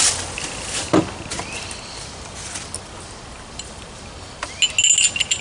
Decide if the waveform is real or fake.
real